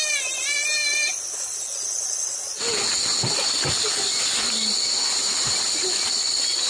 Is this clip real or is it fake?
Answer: real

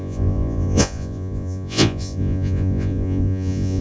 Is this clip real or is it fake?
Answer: fake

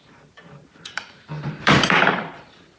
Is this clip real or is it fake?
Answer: fake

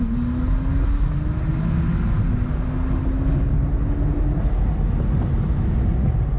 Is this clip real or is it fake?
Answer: real